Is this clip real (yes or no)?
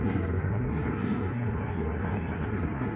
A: no